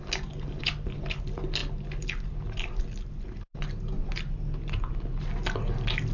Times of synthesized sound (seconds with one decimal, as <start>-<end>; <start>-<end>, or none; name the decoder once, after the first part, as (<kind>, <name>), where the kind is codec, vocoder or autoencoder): none